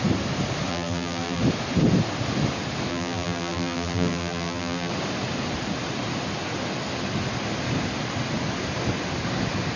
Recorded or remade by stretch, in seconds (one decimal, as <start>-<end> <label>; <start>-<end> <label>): 0.0-0.7 recorded; 0.7-1.4 remade; 1.4-2.9 recorded; 2.9-4.9 remade; 4.9-9.8 recorded